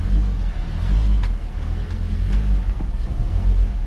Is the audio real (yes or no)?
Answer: no